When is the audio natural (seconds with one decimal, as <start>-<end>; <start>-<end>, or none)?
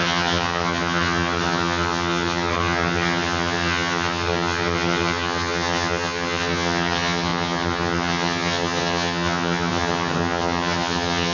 none